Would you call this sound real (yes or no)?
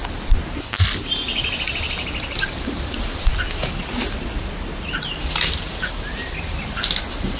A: yes